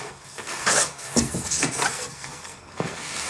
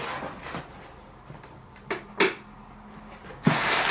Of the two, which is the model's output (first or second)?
first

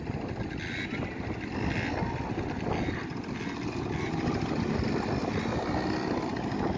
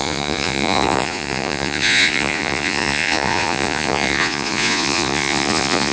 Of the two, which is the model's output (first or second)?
second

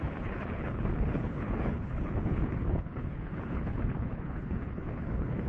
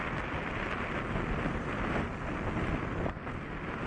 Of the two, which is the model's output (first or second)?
first